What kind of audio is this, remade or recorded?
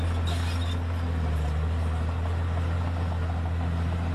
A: recorded